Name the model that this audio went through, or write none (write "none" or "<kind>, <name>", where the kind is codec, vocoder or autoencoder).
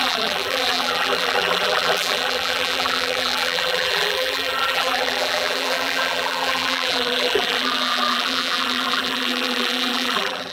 vocoder, BigVGAN v2